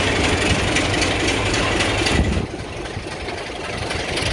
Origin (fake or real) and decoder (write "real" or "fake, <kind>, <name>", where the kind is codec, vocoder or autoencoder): real